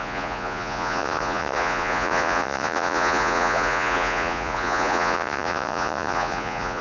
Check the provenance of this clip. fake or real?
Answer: fake